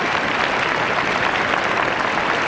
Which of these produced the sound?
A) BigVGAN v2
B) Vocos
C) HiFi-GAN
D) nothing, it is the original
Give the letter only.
D